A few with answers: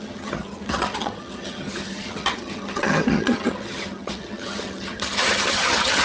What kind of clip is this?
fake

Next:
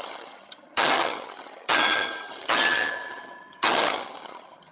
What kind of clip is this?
fake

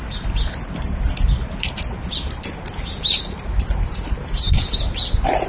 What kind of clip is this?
real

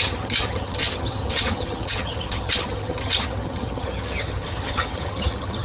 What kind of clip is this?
fake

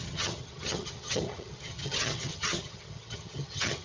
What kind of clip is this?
fake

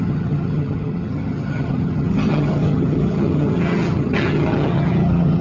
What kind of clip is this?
fake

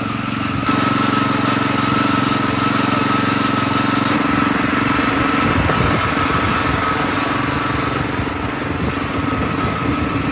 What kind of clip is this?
real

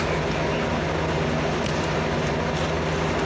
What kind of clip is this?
real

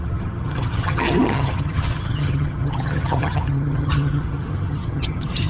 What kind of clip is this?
fake